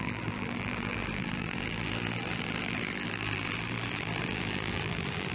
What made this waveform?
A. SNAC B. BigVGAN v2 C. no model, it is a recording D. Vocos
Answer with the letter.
B